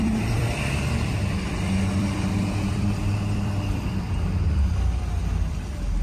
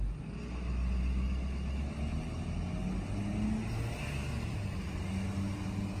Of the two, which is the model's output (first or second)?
first